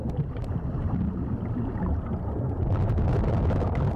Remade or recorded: recorded